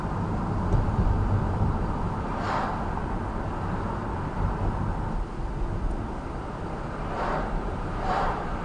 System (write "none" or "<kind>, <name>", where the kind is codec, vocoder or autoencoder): none